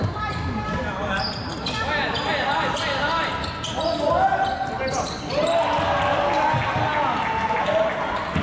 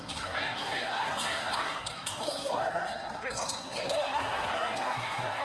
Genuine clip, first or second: first